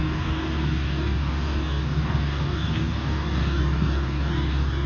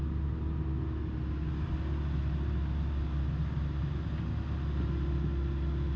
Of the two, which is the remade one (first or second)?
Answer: first